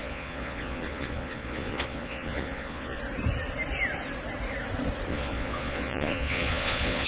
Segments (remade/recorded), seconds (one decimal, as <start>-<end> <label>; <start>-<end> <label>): 0.0-3.0 remade; 3.0-5.1 recorded; 5.1-7.1 remade